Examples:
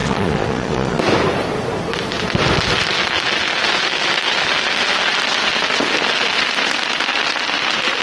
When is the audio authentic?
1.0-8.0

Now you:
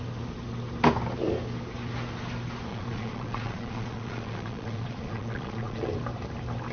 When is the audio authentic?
0.0-2.7; 5.9-6.7

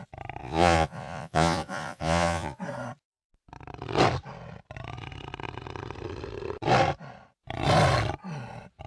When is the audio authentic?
0.0-0.4; 2.6-8.9

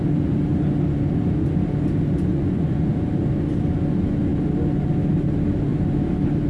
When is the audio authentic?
0.0-2.3; 2.9-6.5

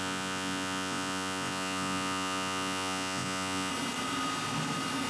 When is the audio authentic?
3.7-5.1

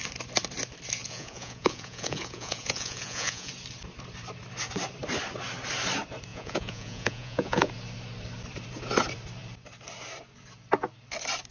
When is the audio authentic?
0.0-1.0; 3.5-6.3; 7.7-11.5